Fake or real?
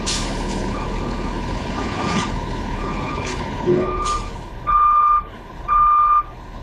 fake